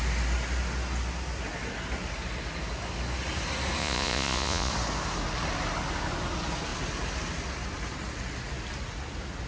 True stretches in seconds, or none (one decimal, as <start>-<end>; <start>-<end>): 0.0-3.8; 4.7-9.5

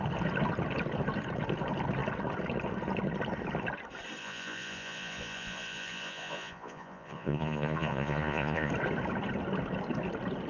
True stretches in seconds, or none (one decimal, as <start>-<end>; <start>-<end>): 0.0-4.2; 8.7-10.5

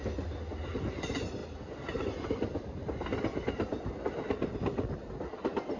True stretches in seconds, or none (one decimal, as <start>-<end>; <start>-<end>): 0.0-5.8

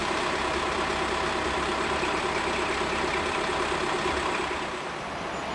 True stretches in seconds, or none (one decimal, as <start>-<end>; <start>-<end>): 0.0-5.5

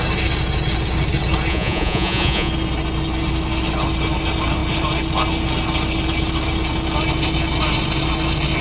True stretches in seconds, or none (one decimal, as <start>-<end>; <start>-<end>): 0.0-1.5; 2.5-8.6

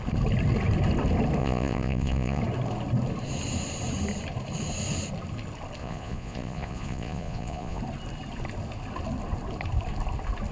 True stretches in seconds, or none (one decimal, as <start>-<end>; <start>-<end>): 0.0-1.4; 2.4-5.8; 7.8-10.5